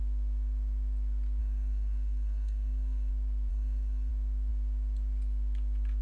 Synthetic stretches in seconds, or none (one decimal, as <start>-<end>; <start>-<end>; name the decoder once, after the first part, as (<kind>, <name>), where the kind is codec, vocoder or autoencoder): 1.4-3.1 (codec, SNAC); 3.5-4.1